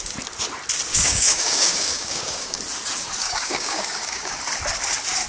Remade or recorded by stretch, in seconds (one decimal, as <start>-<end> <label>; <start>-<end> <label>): 0.0-0.9 recorded; 0.9-2.6 remade; 2.6-3.2 recorded; 3.2-4.4 remade; 4.4-5.3 recorded